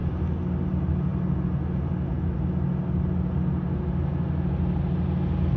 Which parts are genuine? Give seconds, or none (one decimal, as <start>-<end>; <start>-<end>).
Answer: 0.0-5.6